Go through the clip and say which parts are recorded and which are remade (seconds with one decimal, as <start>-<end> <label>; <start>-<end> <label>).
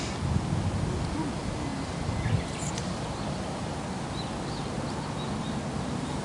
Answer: 0.0-6.2 recorded